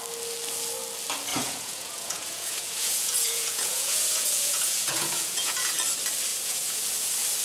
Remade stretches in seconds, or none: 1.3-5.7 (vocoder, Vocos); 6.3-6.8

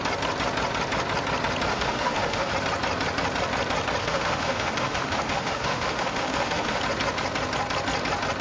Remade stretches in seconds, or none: 1.7-2.5 (autoencoder, DAC-VAE); 4.0-6.8

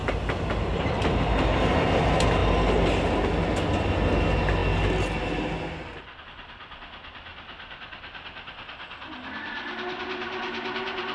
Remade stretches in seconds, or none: none